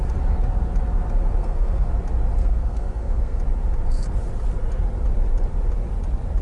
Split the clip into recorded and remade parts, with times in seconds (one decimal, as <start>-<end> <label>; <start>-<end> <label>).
0.0-1.4 recorded; 1.4-1.9 remade; 1.9-2.4 recorded; 2.4-3.4 remade; 3.4-6.4 recorded